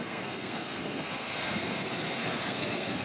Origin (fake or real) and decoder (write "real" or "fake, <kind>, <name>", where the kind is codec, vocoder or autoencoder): fake, codec, SNAC